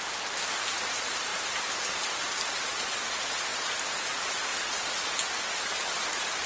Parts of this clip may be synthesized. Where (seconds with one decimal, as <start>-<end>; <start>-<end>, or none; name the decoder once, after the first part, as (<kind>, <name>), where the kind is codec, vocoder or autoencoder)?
none